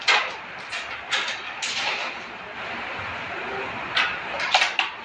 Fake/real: real